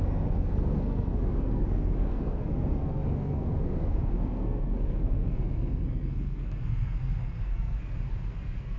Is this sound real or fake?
fake